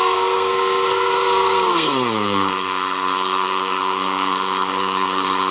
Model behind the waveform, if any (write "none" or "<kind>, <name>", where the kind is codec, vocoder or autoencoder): codec, SNAC